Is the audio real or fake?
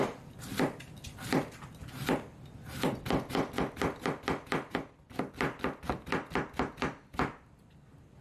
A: real